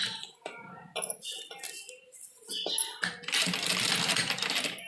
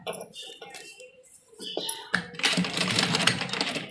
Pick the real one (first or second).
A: first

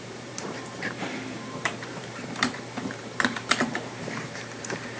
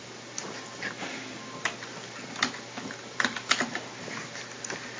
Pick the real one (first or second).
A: second